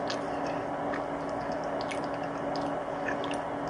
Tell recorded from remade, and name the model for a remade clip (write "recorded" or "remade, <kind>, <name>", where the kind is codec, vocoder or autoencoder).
recorded